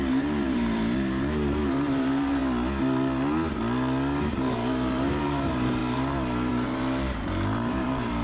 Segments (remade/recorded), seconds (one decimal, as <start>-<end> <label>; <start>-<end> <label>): 0.0-2.4 remade; 2.4-4.3 recorded; 4.3-8.2 remade